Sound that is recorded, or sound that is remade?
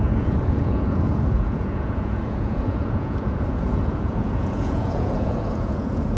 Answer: remade